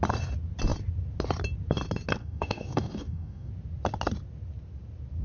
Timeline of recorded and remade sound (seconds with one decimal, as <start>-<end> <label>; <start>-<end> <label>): 0.0-2.2 recorded; 2.2-3.5 remade; 3.5-5.2 recorded

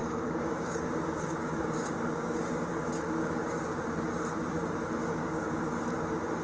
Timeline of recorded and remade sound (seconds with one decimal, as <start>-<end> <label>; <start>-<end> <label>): 0.0-3.8 remade; 3.8-5.2 recorded; 5.2-5.8 remade; 5.8-6.4 recorded